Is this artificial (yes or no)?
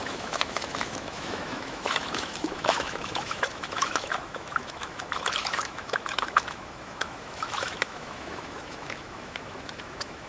yes